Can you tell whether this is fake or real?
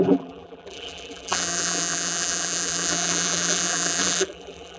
fake